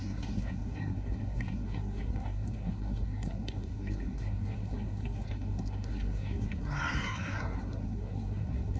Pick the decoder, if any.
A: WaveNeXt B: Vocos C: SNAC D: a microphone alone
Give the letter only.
C